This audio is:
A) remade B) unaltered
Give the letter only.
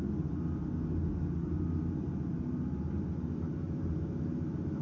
B